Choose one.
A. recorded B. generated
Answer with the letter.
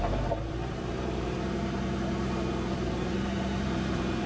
B